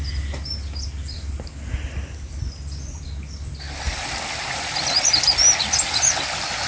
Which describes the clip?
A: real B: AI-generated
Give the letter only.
A